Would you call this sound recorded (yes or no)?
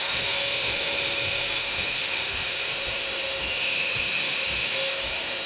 no